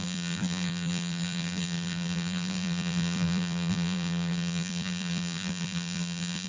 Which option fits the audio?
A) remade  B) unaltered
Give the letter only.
A